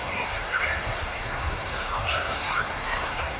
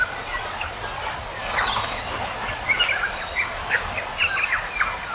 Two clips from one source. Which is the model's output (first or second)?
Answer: first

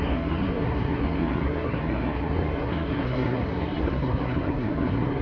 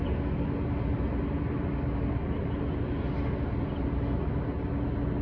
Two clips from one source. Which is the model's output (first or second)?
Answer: first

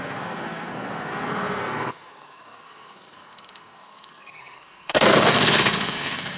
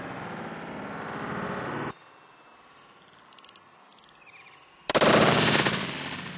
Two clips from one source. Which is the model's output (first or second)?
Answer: first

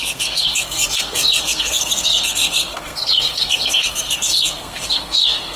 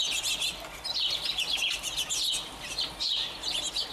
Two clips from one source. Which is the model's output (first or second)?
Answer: first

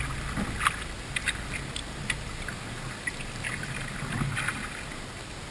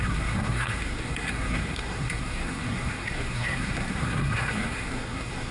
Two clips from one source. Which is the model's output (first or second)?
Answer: second